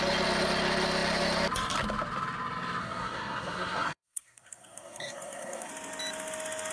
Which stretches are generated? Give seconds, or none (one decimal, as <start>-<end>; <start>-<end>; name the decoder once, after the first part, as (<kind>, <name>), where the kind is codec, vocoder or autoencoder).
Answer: 2.8-5.7 (codec, SNAC)

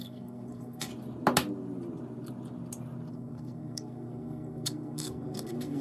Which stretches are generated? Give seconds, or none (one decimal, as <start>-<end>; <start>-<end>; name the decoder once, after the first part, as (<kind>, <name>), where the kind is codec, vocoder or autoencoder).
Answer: 0.0-0.9 (codec, SNAC); 3.1-5.8

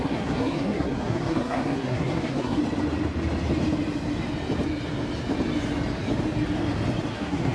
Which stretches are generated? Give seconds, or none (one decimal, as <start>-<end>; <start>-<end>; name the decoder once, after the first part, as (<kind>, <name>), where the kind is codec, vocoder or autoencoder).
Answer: 0.0-2.6 (codec, SNAC); 7.1-7.5

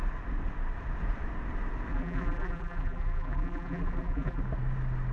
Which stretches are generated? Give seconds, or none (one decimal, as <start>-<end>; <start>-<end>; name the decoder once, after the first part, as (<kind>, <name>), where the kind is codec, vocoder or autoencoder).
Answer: 1.9-4.4 (vocoder, BigVGAN v2)

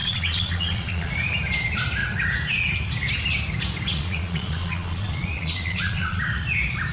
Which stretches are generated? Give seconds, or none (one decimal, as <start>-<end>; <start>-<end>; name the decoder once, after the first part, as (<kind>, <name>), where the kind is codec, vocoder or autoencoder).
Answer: 0.0-1.1 (vocoder, Vocos); 3.9-6.2

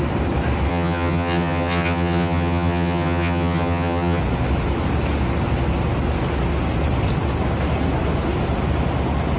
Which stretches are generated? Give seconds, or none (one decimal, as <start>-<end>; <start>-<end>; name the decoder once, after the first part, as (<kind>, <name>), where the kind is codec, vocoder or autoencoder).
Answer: 0.7-4.2 (vocoder, HiFi-GAN)